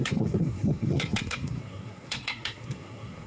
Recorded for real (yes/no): no